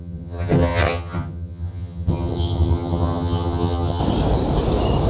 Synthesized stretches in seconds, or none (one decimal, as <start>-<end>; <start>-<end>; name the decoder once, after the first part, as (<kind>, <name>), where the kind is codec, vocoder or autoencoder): 0.0-4.0 (vocoder, HiFi-GAN)